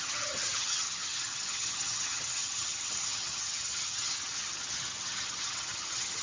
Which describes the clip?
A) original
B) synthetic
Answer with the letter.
B